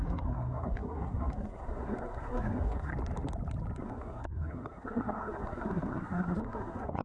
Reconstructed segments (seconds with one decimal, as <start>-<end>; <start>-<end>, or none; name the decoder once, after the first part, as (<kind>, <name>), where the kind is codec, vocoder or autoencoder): 0.0-2.9 (codec, SNAC); 3.8-7.0